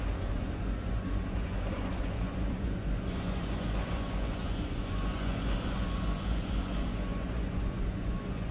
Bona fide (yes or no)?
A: no